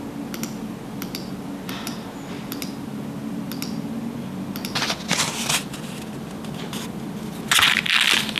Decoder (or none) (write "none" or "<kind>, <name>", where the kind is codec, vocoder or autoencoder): none